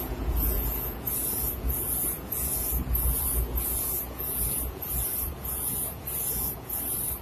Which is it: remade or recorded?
remade